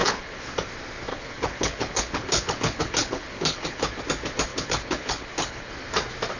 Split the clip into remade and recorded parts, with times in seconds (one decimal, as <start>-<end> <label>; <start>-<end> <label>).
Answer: 0.0-0.5 remade; 0.5-1.1 recorded; 1.1-4.0 remade; 4.0-4.5 recorded; 4.5-5.7 remade; 5.7-6.4 recorded